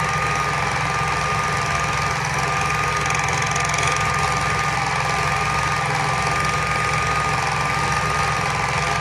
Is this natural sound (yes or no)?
yes